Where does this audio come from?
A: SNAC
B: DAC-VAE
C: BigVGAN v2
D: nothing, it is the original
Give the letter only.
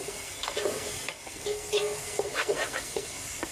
A